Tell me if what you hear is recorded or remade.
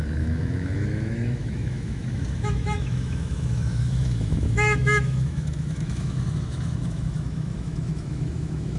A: remade